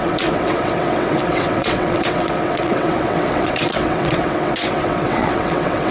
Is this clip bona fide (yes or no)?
no